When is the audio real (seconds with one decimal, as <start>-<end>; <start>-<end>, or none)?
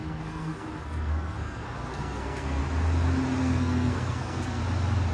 2.6-3.4; 4.6-5.1